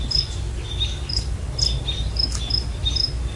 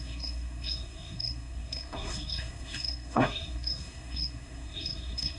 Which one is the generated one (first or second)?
second